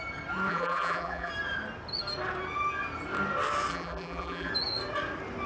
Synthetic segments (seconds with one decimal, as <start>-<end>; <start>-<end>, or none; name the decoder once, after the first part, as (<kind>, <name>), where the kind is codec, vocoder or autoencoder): 0.5-1.3 (vocoder, BigVGAN v2); 3.7-4.5